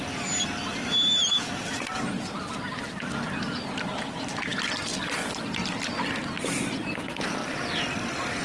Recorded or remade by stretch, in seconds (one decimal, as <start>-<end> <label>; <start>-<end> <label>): 0.0-1.2 recorded; 1.2-2.1 remade; 2.1-7.4 recorded; 7.4-8.4 remade